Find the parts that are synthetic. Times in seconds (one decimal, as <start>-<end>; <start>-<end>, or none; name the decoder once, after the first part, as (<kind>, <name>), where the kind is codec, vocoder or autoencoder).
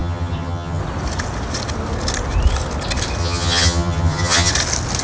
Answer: 0.0-0.8 (vocoder, HiFi-GAN); 3.2-4.5